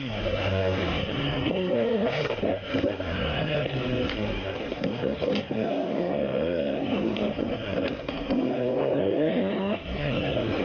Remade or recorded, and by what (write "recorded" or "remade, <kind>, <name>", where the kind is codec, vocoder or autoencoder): remade, codec, SNAC